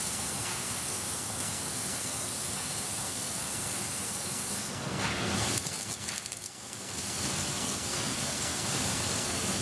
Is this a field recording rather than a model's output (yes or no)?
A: no